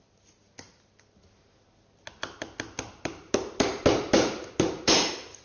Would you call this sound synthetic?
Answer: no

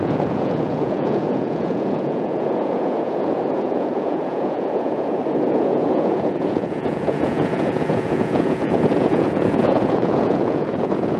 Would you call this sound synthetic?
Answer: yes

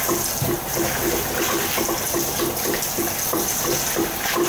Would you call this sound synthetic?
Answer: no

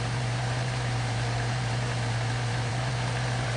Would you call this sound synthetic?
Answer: yes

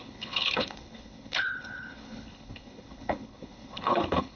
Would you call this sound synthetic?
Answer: yes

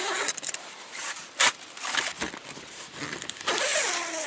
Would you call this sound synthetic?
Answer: no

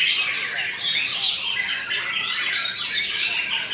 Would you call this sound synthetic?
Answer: no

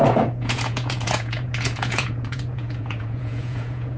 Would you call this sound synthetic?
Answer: yes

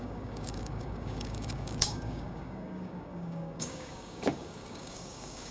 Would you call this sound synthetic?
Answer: yes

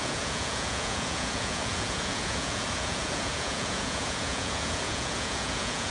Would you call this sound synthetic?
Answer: yes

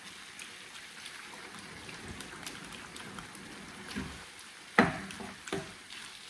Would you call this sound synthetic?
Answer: no